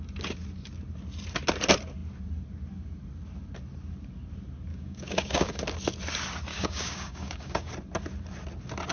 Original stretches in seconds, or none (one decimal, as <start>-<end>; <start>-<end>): 0.0-4.7; 5.6-6.5; 7.7-8.9